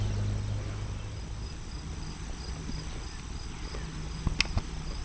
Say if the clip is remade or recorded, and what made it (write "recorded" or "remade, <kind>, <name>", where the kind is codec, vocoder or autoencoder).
recorded